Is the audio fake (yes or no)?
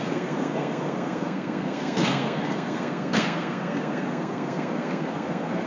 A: yes